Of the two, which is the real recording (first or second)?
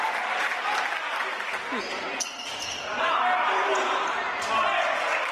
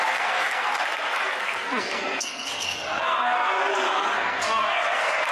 first